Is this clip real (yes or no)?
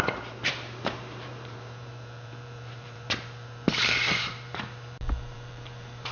no